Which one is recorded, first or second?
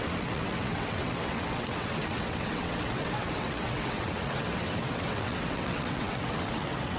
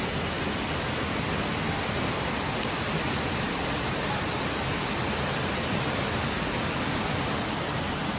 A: second